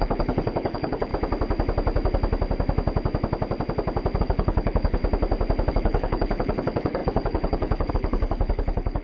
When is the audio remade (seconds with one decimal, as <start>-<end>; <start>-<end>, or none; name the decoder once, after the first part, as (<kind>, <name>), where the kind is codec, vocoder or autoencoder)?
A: 0.0-1.1 (codec, HILCodec); 4.2-5.0; 5.7-9.0